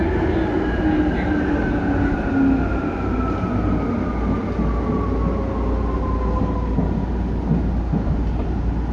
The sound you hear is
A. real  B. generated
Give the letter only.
A